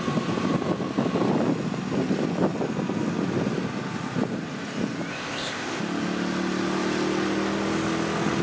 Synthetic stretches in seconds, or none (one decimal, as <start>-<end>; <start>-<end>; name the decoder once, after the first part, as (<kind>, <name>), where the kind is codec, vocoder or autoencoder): 5.1-5.8 (codec, ZipCodec)